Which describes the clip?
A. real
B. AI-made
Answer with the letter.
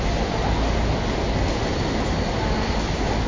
A